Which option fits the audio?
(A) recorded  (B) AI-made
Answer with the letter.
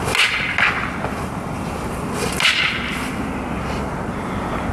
A